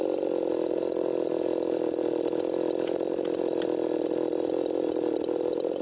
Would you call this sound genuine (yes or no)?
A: yes